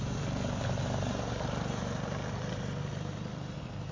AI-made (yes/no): no